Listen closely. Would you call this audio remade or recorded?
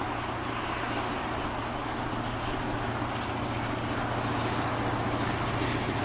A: recorded